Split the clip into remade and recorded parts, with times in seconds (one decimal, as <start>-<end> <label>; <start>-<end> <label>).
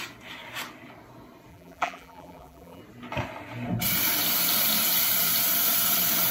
0.0-1.5 recorded; 1.5-2.8 remade; 2.8-6.3 recorded